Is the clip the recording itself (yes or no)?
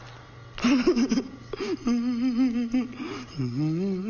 yes